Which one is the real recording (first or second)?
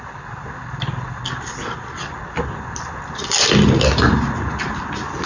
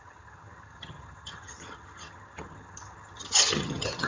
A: first